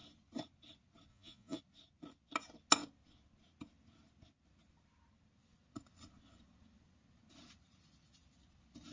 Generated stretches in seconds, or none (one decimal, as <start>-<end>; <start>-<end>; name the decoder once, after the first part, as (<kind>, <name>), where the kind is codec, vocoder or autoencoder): 1.1-1.6 (vocoder, Vocos)